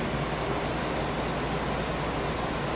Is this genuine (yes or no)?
yes